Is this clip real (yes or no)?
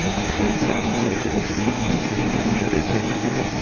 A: no